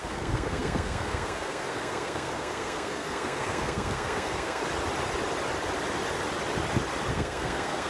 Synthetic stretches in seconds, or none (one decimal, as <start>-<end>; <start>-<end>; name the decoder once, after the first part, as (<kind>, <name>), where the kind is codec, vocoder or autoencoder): 0.0-4.6 (codec, SNAC); 7.1-7.9